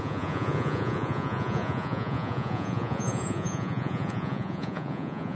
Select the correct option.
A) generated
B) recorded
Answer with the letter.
A